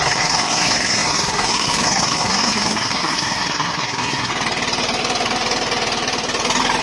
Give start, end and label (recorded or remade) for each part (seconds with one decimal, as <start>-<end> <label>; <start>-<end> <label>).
0.0-4.3 remade; 4.3-6.8 recorded